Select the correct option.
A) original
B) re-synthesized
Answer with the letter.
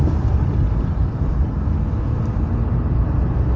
A